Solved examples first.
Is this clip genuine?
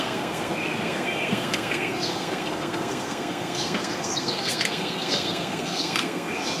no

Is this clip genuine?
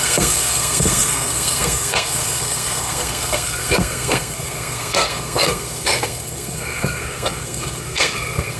no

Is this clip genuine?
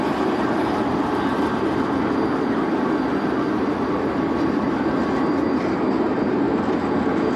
yes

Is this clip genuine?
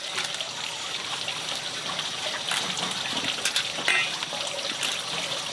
yes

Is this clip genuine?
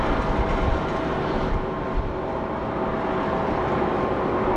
yes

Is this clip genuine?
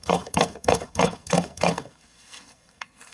no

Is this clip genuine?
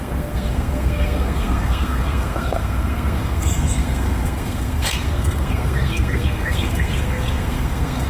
no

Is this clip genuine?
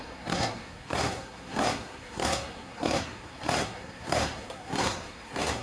no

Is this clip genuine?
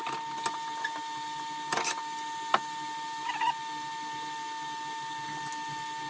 yes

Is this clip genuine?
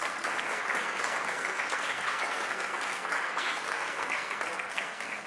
no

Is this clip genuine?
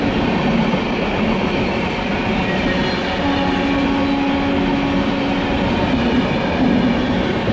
yes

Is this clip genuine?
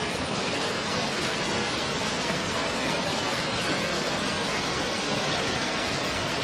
no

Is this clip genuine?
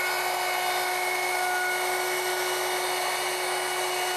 yes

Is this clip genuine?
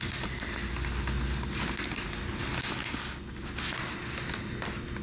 yes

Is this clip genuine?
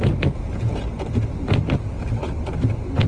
yes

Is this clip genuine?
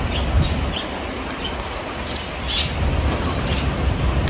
yes